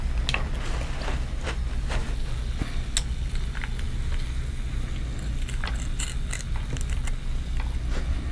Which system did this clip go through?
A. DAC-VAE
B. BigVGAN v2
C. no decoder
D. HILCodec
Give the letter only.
C